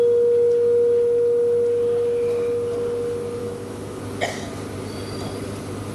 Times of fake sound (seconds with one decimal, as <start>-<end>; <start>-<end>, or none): 3.4-4.0